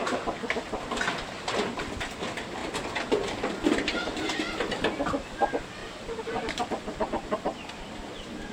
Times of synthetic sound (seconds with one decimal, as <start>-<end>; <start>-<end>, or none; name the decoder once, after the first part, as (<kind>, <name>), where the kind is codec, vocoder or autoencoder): 0.0-2.6 (vocoder, BigVGAN v2); 3.5-8.5